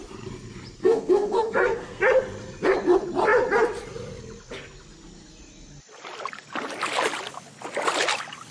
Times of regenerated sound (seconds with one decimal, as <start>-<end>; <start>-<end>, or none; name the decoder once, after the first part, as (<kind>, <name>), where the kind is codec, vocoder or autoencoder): 0.8-2.0 (codec, SNAC)